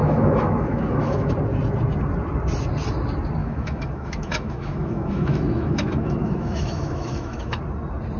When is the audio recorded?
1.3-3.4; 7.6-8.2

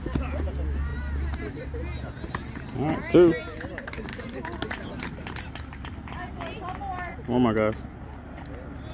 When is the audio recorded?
0.0-8.9